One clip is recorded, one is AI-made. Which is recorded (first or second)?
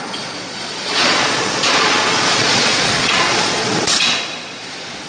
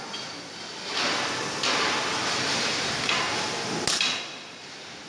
second